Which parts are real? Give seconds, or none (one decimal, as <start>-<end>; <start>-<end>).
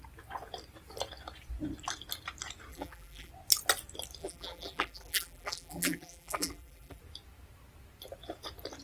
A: 0.0-2.7; 3.3-4.2; 7.0-8.8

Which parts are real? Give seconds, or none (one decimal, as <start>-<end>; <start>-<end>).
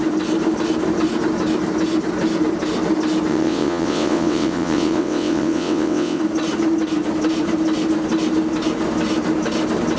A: 0.0-3.3; 6.2-10.0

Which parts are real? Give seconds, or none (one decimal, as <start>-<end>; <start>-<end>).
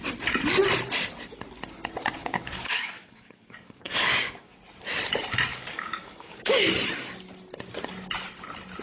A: 0.0-2.2; 4.5-5.5; 6.7-8.8